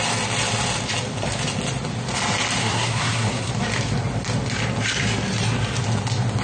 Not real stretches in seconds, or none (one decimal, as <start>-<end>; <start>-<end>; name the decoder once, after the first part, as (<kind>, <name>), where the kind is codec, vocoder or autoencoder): 2.6-3.5 (codec, SNAC)